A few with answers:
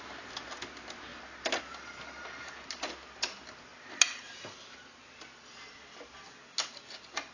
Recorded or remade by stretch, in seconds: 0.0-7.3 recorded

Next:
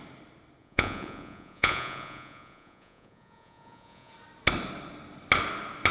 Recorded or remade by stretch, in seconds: 0.0-0.6 recorded; 0.6-4.1 remade; 4.1-5.9 recorded

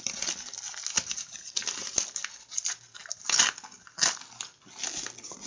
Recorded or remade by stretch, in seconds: 0.0-5.5 recorded

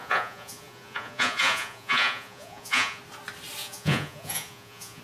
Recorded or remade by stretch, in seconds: 0.0-3.0 remade; 3.0-3.6 recorded; 3.6-5.0 remade

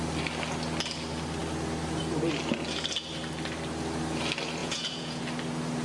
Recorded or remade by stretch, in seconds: 0.0-4.6 recorded; 4.6-5.2 remade; 5.2-5.8 recorded

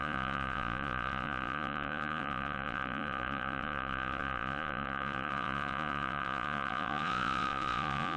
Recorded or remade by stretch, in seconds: 0.0-8.2 remade

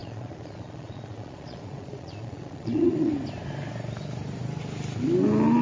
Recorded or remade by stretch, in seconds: 0.0-3.1 remade; 3.1-5.6 recorded

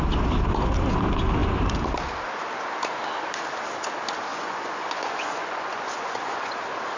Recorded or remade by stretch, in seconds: 0.0-4.3 recorded; 4.3-6.5 remade; 6.5-7.0 recorded